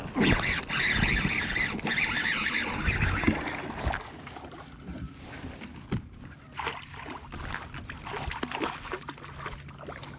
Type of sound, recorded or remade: recorded